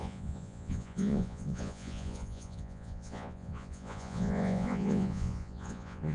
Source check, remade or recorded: remade